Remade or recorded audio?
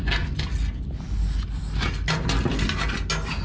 recorded